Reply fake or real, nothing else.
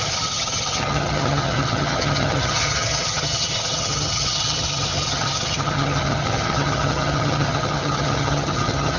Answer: fake